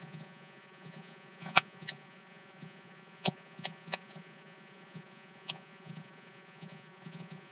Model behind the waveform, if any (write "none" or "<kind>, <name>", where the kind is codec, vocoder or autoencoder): vocoder, Vocos